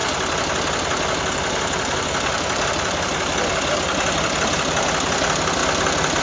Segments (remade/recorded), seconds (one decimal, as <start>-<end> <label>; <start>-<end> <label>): 0.0-6.2 recorded